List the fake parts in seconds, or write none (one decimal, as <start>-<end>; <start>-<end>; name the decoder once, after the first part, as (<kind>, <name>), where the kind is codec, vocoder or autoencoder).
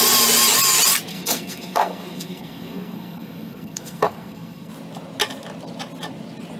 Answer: 1.1-4.7 (codec, SNAC)